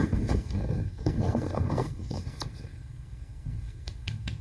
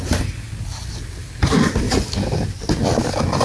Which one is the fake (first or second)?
first